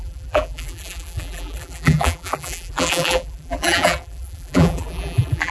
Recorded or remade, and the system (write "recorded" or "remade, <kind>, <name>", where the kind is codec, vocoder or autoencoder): remade, vocoder, BigVGAN v2